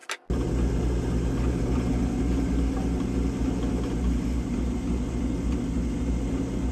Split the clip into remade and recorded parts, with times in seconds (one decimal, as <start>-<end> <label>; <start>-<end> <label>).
0.0-6.7 recorded